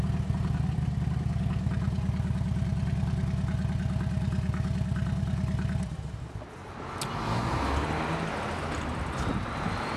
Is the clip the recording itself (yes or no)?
yes